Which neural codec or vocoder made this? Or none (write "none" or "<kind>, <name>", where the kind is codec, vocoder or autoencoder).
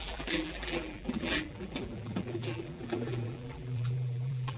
vocoder, BigVGAN v2